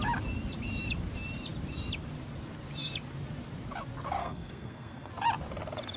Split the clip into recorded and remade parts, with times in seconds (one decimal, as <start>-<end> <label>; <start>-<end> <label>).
0.0-4.2 recorded; 4.2-5.1 remade; 5.1-6.0 recorded